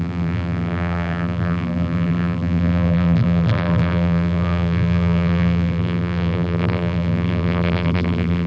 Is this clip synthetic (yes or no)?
yes